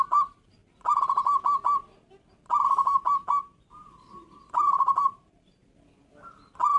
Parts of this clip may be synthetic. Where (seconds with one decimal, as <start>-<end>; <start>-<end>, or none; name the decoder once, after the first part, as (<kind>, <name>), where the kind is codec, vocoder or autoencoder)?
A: 0.0-0.6 (vocoder, BigVGAN v2); 3.6-5.6